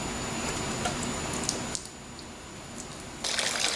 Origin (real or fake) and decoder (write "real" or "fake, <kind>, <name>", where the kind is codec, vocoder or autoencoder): real